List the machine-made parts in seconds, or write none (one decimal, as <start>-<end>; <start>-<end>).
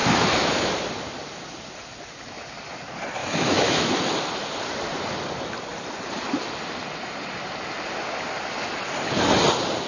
0.0-0.7; 3.2-3.9